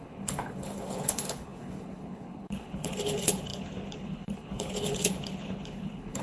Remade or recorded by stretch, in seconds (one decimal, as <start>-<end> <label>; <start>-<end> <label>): 0.0-6.2 remade